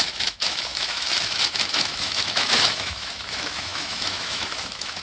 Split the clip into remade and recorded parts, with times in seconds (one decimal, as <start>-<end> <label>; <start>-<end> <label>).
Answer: 0.0-5.0 remade

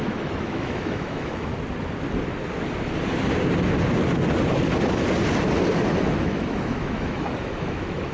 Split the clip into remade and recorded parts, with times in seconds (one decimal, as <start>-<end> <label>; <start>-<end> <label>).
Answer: 0.0-1.5 remade; 1.5-6.2 recorded; 6.2-8.1 remade

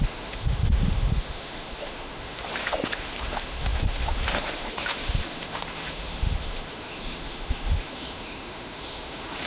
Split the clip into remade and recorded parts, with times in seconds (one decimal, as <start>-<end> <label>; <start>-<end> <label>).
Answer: 0.0-9.5 remade